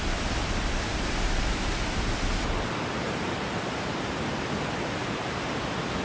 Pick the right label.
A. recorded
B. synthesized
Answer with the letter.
A